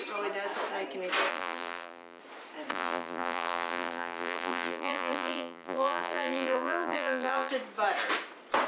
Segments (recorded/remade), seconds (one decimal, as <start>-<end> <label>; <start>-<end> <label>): 0.0-1.3 recorded; 1.3-2.2 remade; 2.2-2.7 recorded; 2.7-7.5 remade; 7.5-8.7 recorded